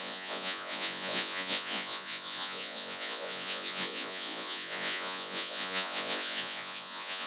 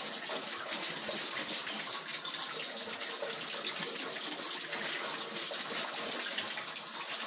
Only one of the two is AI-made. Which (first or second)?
first